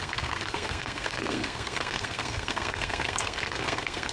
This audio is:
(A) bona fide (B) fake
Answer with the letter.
B